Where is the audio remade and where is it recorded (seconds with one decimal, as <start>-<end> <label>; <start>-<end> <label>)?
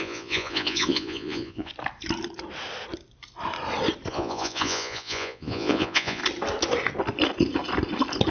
0.0-1.7 remade; 1.7-4.1 recorded; 4.1-6.2 remade; 6.2-8.3 recorded